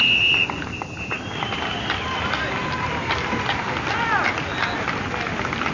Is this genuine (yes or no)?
yes